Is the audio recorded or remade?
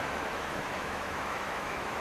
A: remade